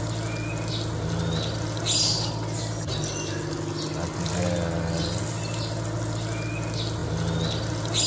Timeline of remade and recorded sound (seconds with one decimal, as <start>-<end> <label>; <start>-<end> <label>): 0.0-8.1 recorded